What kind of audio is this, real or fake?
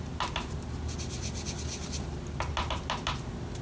real